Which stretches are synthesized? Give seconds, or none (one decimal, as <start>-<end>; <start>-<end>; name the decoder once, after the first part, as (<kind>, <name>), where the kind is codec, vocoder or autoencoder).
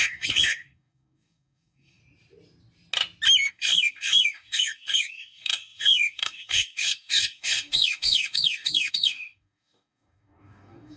0.0-2.0 (codec, DAC); 3.5-11.0